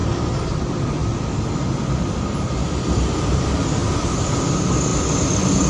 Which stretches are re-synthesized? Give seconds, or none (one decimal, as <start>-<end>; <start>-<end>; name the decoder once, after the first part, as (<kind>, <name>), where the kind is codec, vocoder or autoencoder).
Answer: none